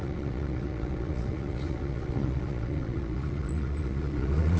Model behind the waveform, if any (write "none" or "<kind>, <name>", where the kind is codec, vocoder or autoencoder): vocoder, Vocos